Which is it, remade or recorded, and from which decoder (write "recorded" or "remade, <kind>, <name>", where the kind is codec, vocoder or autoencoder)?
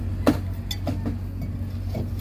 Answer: recorded